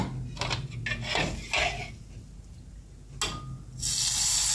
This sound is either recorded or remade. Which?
recorded